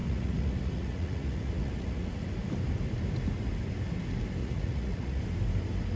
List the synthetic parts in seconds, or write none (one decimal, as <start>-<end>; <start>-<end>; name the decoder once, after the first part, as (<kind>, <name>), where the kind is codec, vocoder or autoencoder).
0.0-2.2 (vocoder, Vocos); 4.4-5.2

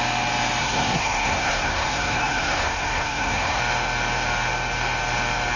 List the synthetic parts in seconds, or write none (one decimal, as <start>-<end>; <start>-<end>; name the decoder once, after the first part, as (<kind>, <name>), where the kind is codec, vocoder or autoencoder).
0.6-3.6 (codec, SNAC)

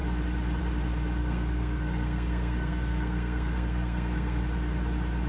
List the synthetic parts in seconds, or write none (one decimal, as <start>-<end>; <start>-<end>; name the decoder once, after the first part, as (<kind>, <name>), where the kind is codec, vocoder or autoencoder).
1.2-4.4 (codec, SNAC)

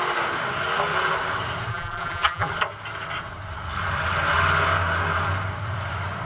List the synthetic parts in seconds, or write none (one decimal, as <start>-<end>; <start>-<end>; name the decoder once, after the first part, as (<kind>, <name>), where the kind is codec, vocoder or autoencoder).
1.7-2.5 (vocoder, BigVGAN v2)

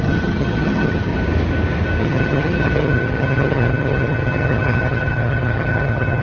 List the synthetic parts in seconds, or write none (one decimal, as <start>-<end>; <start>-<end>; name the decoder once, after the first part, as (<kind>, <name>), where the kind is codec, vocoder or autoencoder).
0.0-1.1 (vocoder, HiFi-GAN); 2.0-6.2